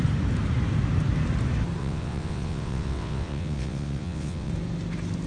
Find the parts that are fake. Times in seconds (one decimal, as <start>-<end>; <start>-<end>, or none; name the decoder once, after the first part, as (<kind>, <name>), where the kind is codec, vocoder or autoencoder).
1.8-4.5 (vocoder, WaveNeXt)